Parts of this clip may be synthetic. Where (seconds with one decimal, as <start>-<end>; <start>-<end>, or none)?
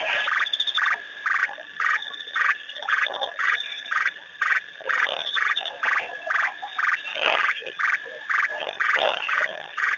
1.4-5.7; 7.1-7.8; 8.6-10.0